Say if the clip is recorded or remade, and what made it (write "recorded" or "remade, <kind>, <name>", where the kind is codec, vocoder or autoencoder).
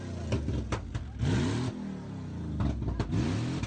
recorded